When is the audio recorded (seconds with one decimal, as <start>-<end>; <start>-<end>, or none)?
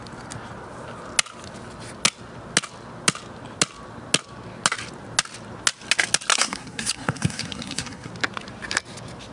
0.0-6.3; 8.1-9.3